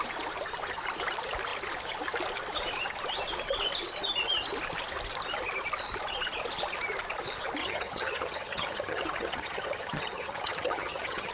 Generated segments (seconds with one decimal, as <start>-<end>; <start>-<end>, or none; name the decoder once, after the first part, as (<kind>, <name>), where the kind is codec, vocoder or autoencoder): 7.6-11.3 (vocoder, HiFi-GAN)